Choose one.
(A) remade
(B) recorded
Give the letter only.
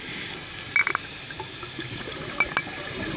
B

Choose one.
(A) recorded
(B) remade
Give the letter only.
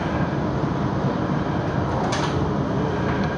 A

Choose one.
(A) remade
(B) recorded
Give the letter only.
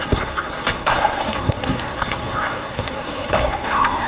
A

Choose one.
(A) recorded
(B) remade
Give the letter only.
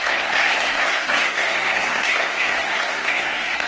B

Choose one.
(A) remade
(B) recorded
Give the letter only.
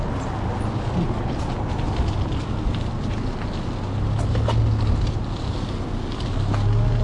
B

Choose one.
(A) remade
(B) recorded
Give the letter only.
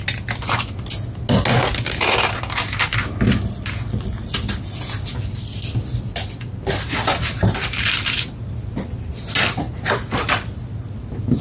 B